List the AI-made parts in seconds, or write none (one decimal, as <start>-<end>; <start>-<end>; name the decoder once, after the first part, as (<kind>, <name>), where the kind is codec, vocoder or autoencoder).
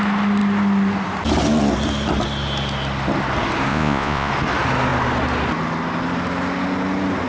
3.7-4.3 (vocoder, Vocos)